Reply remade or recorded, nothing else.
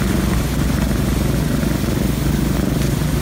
recorded